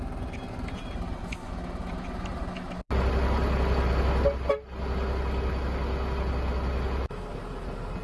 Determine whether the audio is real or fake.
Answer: real